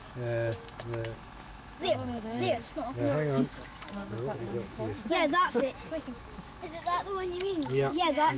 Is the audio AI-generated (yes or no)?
yes